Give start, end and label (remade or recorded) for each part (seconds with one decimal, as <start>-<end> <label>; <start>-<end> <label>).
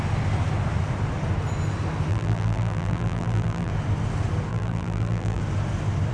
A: 0.0-2.1 recorded; 2.1-3.7 remade; 3.7-4.5 recorded; 4.5-5.4 remade; 5.4-6.1 recorded